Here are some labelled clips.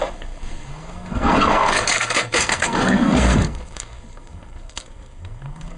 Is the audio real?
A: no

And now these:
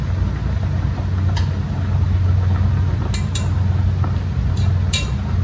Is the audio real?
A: yes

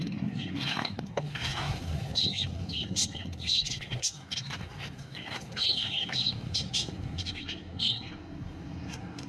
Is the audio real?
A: no